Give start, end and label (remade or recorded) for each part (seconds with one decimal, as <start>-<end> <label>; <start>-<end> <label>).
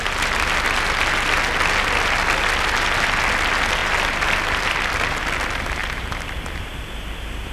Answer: 0.0-3.8 recorded; 3.8-4.9 remade; 4.9-5.8 recorded; 5.8-6.6 remade; 6.6-7.5 recorded